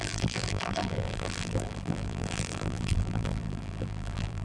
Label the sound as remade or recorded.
remade